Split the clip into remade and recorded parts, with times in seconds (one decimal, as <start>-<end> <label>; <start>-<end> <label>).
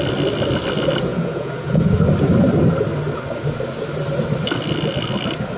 0.0-1.1 recorded; 1.1-2.0 remade; 2.0-5.6 recorded